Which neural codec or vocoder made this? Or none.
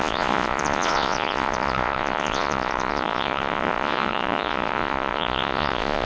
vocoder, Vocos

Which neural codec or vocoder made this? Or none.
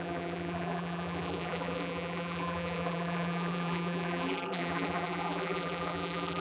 vocoder, BigVGAN v2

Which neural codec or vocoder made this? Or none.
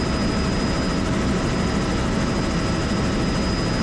none